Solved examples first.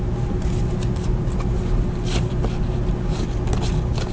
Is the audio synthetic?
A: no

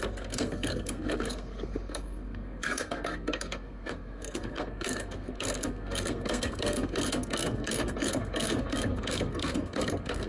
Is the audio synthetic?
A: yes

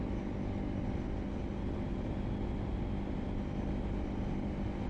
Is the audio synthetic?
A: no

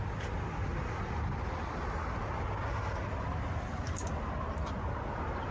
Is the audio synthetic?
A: no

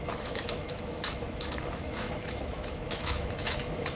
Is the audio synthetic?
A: yes